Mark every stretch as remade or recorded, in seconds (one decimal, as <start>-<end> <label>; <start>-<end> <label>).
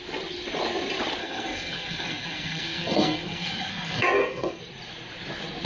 0.0-1.2 recorded; 1.2-4.6 remade; 4.6-5.7 recorded